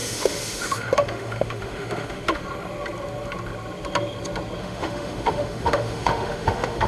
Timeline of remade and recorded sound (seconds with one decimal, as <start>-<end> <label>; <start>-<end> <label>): 0.0-2.4 remade; 2.4-4.6 recorded; 4.6-6.9 remade